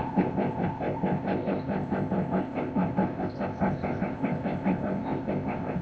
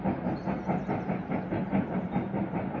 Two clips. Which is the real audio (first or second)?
second